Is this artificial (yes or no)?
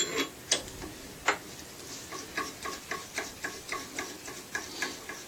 no